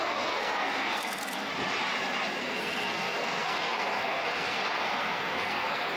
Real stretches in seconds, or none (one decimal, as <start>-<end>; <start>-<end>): 1.5-2.4